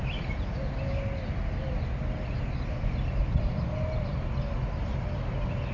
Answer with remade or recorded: recorded